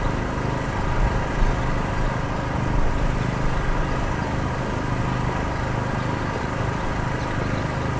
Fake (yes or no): no